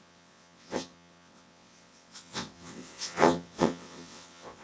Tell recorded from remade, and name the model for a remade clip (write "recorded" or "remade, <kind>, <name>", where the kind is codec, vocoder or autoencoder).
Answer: remade, vocoder, WaveNeXt